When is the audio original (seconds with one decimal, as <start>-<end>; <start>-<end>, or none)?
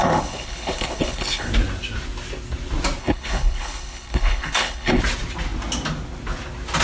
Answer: 1.5-3.0; 5.0-6.8